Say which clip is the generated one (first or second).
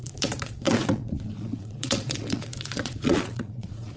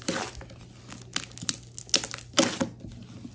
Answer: first